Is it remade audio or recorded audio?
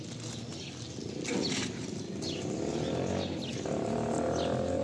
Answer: recorded